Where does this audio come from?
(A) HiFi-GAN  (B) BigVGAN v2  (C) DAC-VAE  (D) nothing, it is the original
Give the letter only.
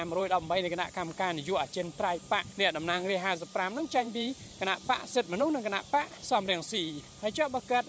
B